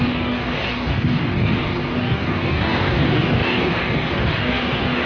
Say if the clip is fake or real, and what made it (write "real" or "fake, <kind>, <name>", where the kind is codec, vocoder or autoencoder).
fake, codec, DAC